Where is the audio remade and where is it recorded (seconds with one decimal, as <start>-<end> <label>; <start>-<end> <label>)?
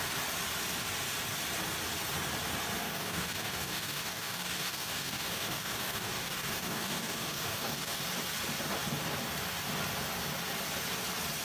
0.0-2.8 recorded; 2.8-8.0 remade; 8.0-11.4 recorded